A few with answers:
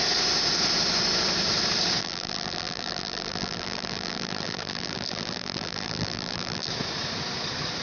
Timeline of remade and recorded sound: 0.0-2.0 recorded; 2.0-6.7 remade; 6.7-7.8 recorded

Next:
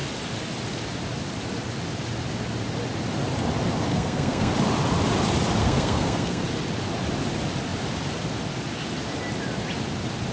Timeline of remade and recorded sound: 0.0-3.9 recorded; 3.9-4.5 remade; 4.5-5.6 recorded; 5.6-6.4 remade; 6.4-10.3 recorded

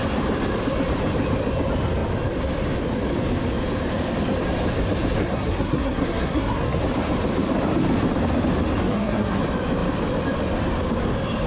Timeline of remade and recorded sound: 0.0-5.2 recorded; 5.2-6.8 remade; 6.8-8.8 recorded; 8.8-9.4 remade; 9.4-11.5 recorded

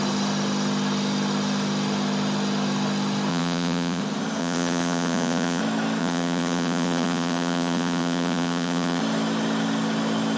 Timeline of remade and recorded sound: 0.0-3.3 recorded; 3.3-4.0 remade; 4.0-4.4 recorded; 4.4-5.6 remade; 5.6-6.0 recorded; 6.0-9.0 remade; 9.0-10.4 recorded

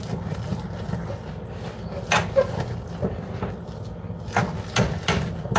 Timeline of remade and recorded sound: 0.0-5.6 recorded

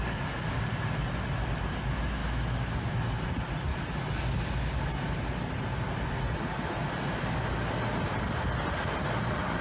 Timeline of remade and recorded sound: 0.0-2.2 recorded; 2.2-2.9 remade; 2.9-9.6 recorded